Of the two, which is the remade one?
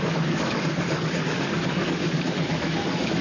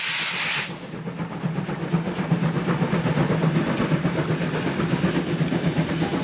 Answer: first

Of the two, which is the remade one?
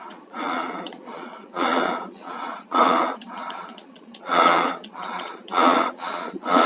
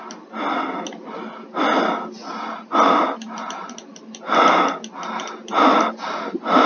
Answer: first